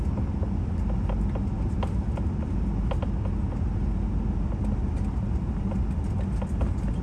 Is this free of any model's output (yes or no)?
yes